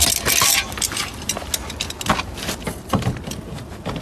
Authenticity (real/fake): real